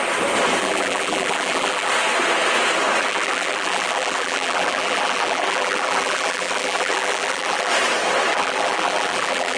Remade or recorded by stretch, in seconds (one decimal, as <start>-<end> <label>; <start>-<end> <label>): 0.0-0.6 recorded; 0.6-1.9 remade; 1.9-3.0 recorded; 3.0-7.7 remade; 7.7-8.3 recorded; 8.3-9.6 remade